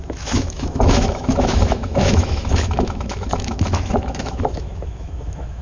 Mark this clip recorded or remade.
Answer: remade